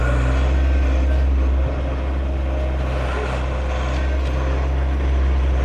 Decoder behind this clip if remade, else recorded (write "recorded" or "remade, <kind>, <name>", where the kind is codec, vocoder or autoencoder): recorded